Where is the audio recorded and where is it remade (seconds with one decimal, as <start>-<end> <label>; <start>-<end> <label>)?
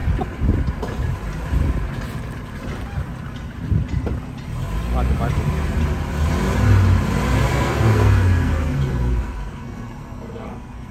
0.0-7.5 recorded; 7.5-10.9 remade